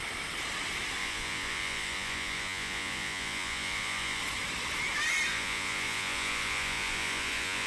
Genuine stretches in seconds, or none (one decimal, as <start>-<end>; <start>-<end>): 0.0-1.0; 4.2-5.3